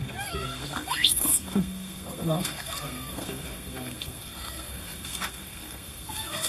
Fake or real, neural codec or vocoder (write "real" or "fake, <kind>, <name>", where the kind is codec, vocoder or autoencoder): fake, codec, SNAC